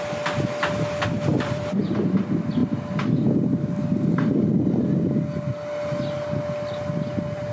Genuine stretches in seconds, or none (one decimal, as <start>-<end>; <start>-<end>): 0.0-1.3; 1.8-2.6; 3.3-7.5